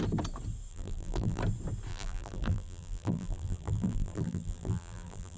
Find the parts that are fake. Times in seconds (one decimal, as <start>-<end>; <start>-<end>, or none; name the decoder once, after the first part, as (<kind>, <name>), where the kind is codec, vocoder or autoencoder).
0.7-1.4 (vocoder, BigVGAN v2); 1.9-5.4